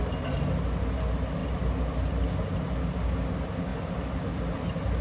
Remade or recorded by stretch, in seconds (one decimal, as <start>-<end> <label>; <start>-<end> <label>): 0.0-3.7 recorded; 3.7-5.0 remade